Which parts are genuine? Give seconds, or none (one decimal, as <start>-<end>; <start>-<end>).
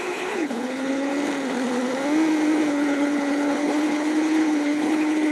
1.1-2.7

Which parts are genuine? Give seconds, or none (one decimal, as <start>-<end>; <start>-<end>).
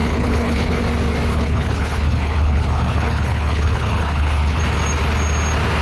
0.8-1.3; 4.6-5.8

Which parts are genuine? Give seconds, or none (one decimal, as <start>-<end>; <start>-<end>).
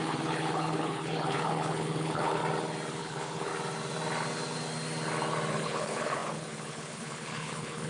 2.4-3.0; 3.5-5.5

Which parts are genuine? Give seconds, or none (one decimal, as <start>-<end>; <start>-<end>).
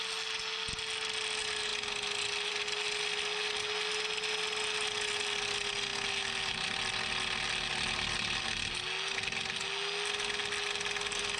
0.0-11.4